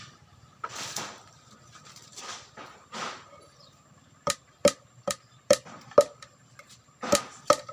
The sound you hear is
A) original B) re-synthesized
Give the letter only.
B